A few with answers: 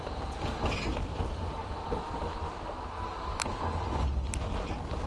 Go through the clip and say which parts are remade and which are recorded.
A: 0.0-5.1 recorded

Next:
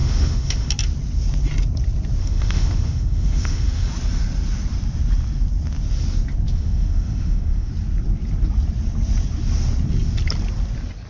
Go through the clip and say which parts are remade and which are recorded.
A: 0.0-0.7 remade; 0.7-2.2 recorded; 2.2-3.9 remade; 3.9-6.5 recorded; 6.5-7.7 remade; 7.7-11.1 recorded

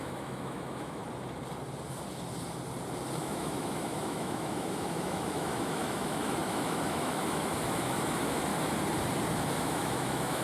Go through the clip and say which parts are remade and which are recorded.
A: 0.0-1.0 remade; 1.0-3.2 recorded; 3.2-8.5 remade; 8.5-9.6 recorded; 9.6-10.4 remade

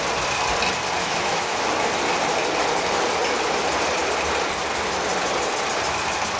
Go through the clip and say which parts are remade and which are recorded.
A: 0.0-1.0 recorded; 1.0-1.7 remade; 1.7-6.4 recorded

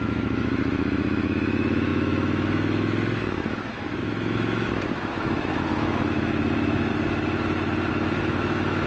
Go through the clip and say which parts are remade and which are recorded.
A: 0.0-6.9 remade; 6.9-7.9 recorded; 7.9-8.9 remade

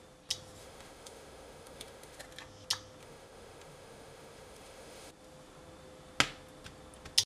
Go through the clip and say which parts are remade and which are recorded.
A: 0.0-0.6 recorded; 0.6-2.2 remade; 2.2-3.0 recorded; 3.0-5.1 remade; 5.1-7.3 recorded

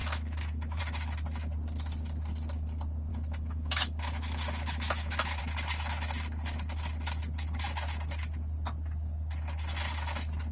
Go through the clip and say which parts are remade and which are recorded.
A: 0.0-0.8 remade; 0.8-3.1 recorded; 3.1-5.4 remade; 5.4-10.5 recorded

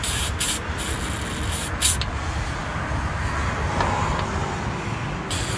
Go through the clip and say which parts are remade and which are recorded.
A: 0.0-5.6 recorded